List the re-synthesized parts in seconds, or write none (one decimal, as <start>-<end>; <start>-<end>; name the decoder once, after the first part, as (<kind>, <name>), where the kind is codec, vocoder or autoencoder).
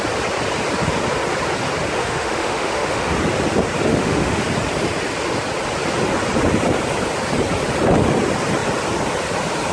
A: 2.0-3.1 (autoencoder, DAC-VAE); 3.9-4.4